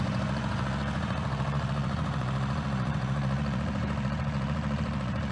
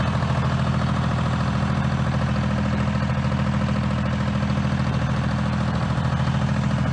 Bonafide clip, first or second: second